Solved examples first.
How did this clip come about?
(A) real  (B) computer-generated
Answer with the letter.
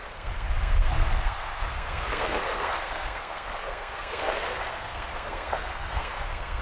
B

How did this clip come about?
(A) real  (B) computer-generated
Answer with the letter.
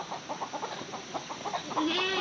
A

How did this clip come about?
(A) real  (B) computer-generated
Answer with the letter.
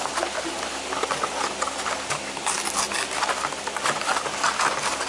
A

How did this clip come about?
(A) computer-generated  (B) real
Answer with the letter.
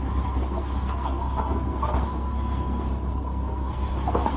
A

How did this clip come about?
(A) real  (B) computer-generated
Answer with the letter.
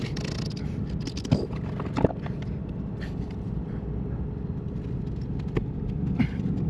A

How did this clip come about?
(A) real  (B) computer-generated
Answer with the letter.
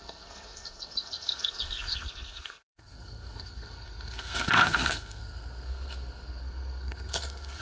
B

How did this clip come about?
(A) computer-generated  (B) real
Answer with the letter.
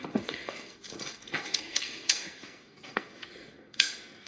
A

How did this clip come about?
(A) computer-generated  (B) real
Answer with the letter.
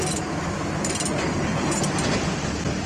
B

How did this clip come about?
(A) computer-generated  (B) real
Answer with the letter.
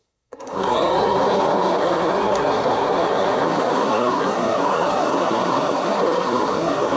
A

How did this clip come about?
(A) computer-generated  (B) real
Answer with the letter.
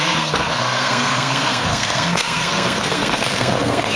A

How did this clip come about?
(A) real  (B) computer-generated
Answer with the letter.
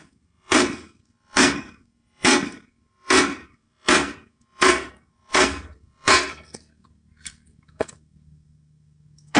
B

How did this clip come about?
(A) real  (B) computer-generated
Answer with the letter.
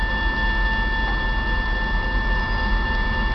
A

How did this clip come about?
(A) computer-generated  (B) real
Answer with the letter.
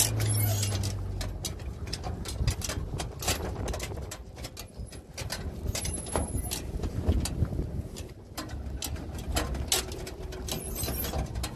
B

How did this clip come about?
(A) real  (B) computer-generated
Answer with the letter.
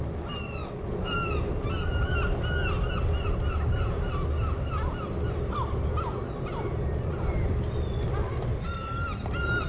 A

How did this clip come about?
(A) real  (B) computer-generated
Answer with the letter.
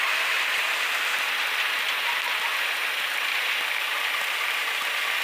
A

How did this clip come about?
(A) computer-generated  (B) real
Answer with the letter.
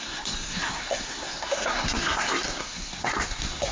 A